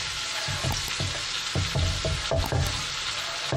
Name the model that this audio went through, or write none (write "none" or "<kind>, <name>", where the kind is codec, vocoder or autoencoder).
none